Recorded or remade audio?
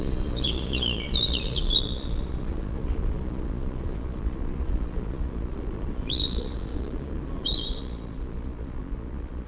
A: remade